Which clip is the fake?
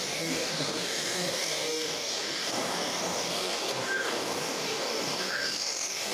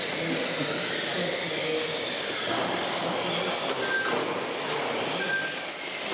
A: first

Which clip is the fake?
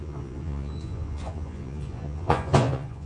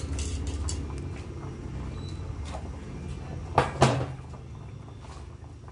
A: first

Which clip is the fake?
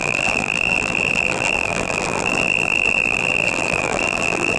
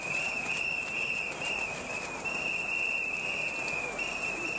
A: first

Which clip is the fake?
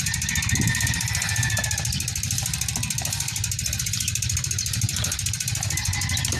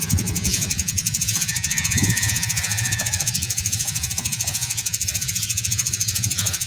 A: second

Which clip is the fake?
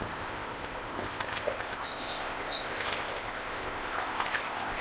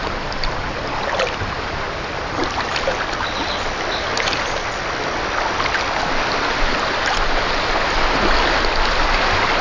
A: first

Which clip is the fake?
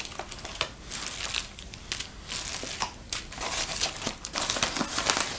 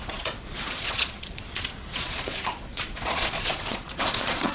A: second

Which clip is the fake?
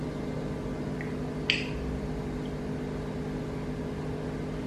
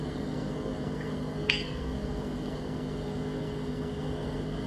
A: second